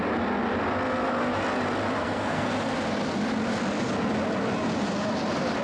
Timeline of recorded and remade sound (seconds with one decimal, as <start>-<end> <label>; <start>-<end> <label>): 0.0-2.0 recorded; 2.0-2.5 remade; 2.5-5.6 recorded